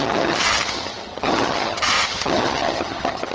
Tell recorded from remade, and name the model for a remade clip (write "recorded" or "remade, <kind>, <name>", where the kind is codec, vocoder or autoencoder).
remade, vocoder, HiFi-GAN